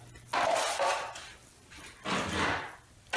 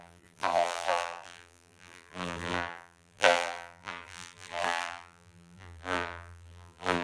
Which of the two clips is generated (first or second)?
second